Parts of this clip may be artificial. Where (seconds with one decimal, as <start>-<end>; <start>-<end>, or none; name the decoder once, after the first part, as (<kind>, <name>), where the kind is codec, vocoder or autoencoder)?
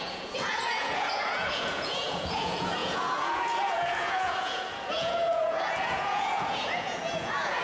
0.0-7.6 (vocoder, Vocos)